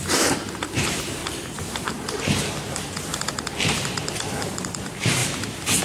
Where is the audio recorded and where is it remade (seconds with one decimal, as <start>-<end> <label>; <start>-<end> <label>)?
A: 0.0-1.2 remade; 1.2-1.9 recorded; 1.9-3.1 remade; 3.1-3.7 recorded; 3.7-5.8 remade